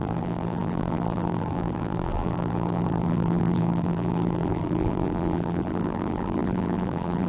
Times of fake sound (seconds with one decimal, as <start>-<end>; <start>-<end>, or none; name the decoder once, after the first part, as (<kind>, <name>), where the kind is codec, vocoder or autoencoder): 0.0-7.3 (vocoder, BigVGAN v2)